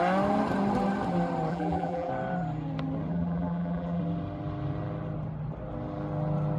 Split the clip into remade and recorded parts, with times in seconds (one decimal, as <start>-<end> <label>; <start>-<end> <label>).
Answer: 0.0-1.5 recorded; 1.5-2.1 remade; 2.1-3.1 recorded; 3.1-4.0 remade; 4.0-6.6 recorded